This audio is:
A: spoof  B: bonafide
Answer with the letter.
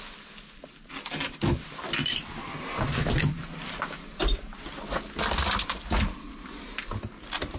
B